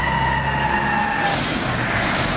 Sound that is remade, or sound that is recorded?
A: recorded